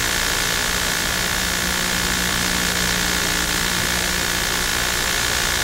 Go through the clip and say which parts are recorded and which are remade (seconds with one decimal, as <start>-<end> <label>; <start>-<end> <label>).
0.0-5.6 recorded